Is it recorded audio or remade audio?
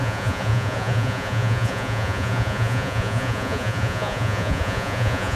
remade